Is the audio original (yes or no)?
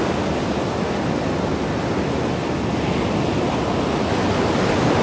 yes